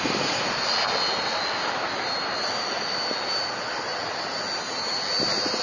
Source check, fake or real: real